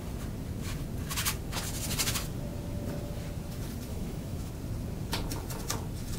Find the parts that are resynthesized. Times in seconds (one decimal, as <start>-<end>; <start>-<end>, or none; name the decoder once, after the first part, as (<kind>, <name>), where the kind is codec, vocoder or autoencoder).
3.9-4.5 (autoencoder, DAC-VAE)